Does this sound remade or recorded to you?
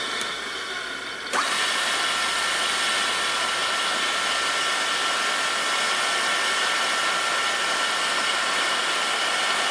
recorded